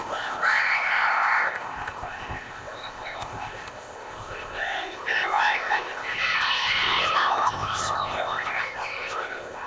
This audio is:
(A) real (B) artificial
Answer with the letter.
B